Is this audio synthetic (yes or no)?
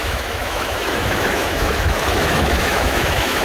yes